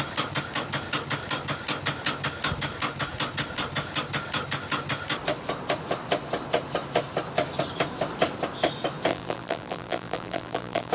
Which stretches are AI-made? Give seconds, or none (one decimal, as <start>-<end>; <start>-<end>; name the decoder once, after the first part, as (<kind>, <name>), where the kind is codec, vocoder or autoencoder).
9.1-10.9 (vocoder, BigVGAN v2)